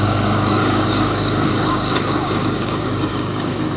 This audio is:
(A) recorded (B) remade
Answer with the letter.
B